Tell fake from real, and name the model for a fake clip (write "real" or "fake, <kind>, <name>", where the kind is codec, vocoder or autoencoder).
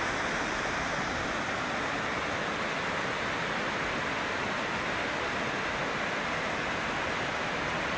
real